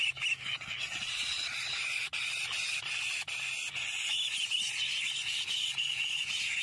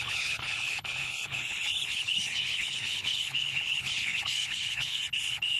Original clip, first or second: first